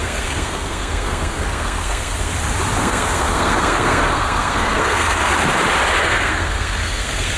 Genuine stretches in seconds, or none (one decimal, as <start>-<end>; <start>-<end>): 2.3-2.8; 5.3-6.0